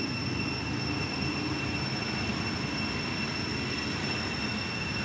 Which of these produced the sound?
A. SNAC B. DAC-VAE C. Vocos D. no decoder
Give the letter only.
D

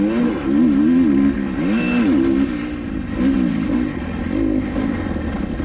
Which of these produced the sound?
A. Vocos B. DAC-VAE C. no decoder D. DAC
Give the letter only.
C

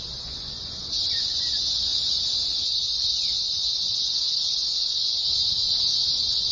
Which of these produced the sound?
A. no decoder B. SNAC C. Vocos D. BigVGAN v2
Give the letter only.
C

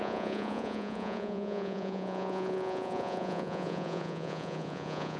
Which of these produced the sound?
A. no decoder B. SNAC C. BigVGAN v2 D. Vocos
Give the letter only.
D